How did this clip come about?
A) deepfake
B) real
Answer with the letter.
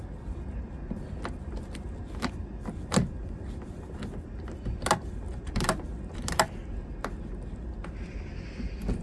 B